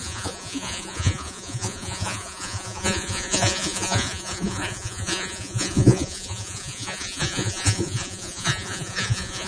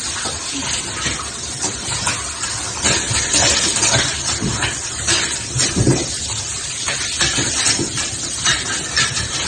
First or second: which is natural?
second